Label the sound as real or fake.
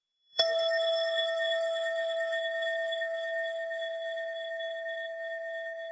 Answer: fake